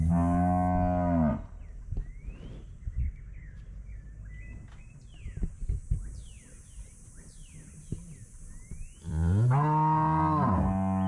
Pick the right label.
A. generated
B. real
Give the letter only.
B